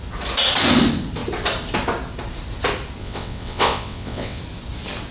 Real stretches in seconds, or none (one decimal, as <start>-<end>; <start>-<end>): 0.0-3.0; 4.4-5.1